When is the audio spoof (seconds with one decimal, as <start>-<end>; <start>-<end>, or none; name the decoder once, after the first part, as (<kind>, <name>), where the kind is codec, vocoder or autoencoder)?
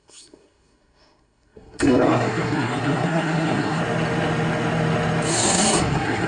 0.0-3.8 (codec, SNAC); 5.3-6.3